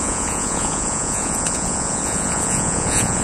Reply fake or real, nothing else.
fake